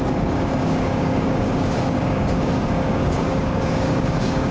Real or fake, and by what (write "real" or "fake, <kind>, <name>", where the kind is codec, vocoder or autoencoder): fake, codec, DAC